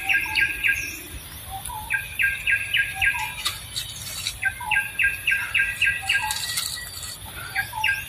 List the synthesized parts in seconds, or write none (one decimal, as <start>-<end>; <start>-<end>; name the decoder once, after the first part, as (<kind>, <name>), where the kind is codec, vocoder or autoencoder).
none